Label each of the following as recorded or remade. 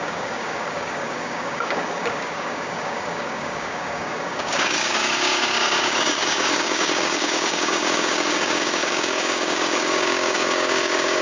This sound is remade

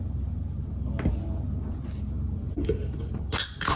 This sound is recorded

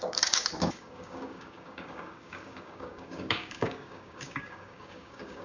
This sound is remade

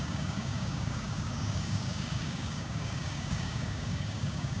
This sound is remade